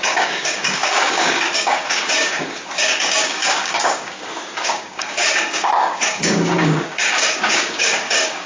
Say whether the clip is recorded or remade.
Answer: remade